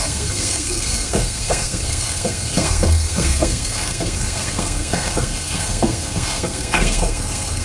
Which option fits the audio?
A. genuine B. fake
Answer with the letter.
B